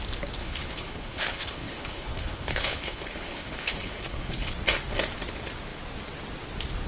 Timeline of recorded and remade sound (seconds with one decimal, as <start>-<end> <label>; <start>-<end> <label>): 0.0-0.4 recorded; 0.4-4.5 remade; 4.5-6.9 recorded